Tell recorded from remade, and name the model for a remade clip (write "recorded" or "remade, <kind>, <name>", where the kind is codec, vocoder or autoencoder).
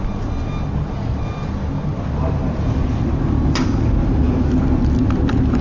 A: recorded